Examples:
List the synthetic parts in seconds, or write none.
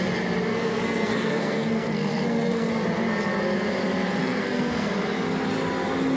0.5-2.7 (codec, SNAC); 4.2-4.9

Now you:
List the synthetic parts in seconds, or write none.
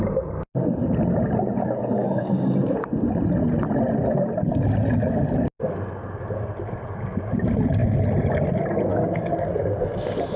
1.6-2.3 (codec, DAC); 8.9-9.9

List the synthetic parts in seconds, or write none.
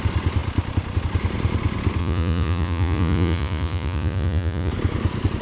2.0-4.7 (vocoder, Vocos)